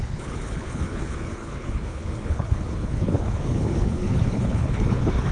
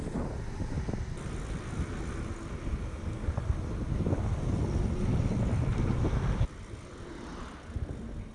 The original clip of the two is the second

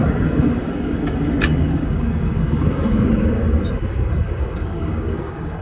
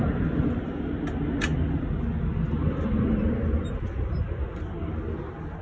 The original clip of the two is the second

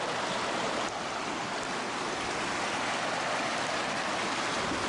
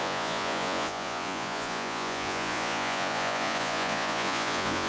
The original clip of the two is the first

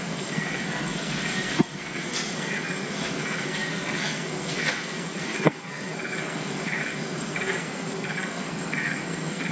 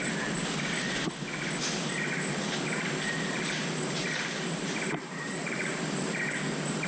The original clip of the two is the second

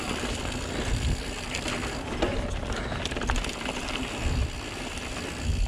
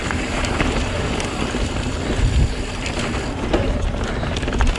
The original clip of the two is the first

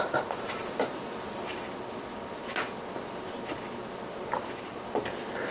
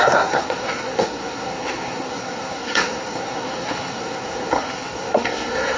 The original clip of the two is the first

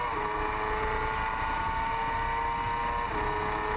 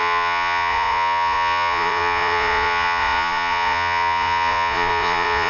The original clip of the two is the first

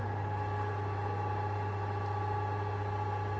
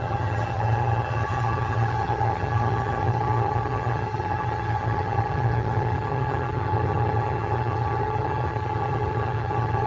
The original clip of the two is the first